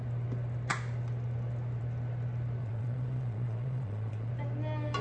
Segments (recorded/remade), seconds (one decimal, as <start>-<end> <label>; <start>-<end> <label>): 0.0-2.6 recorded; 2.6-4.3 remade; 4.3-5.0 recorded